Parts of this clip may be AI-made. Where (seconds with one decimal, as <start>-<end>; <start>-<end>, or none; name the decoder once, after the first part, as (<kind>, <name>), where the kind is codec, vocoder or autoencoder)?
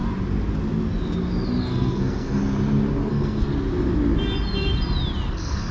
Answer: 1.6-2.4 (codec, SNAC); 3.1-3.5; 5.3-5.7